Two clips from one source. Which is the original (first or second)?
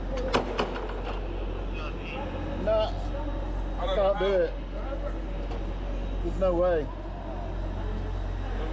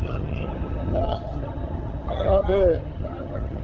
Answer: first